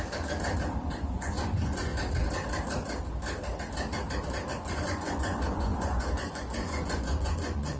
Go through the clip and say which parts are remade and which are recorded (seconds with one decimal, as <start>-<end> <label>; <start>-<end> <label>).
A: 0.0-0.8 recorded; 0.8-1.9 remade; 1.9-4.5 recorded; 4.5-7.8 remade